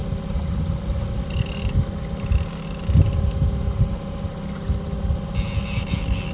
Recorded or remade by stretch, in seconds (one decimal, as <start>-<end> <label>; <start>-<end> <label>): 0.0-6.3 recorded